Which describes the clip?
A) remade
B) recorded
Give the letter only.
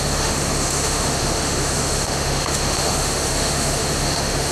A